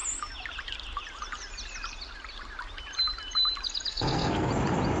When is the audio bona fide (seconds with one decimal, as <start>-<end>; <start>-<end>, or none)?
0.0-3.9; 4.5-5.0